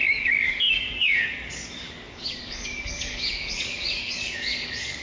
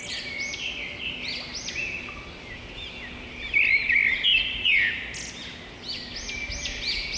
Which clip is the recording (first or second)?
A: second